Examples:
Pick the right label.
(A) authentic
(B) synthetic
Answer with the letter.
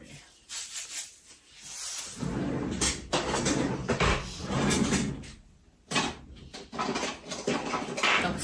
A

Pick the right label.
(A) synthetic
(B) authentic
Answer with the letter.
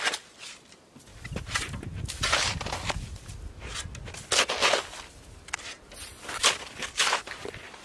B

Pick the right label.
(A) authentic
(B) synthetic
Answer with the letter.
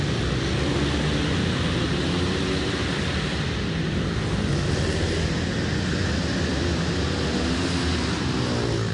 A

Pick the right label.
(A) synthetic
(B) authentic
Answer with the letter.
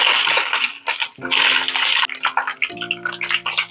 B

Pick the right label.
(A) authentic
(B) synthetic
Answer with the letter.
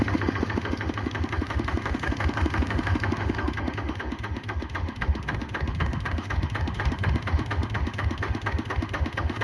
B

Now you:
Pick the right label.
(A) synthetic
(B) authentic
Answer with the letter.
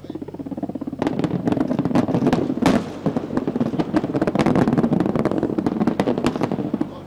B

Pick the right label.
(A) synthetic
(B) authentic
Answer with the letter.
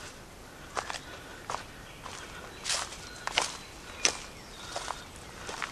B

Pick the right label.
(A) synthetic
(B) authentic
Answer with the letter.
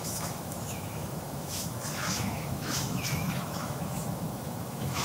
A